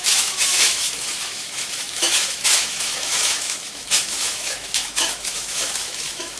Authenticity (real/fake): fake